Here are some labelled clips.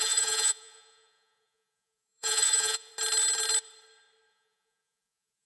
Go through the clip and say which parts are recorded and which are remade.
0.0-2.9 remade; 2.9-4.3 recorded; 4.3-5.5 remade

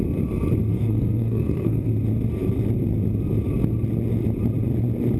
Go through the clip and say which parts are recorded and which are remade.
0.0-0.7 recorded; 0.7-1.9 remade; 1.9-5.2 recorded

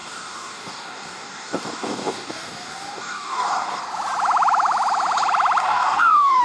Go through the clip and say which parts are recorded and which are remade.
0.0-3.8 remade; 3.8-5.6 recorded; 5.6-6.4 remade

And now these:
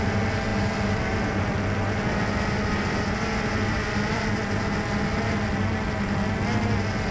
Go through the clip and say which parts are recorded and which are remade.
0.0-7.1 recorded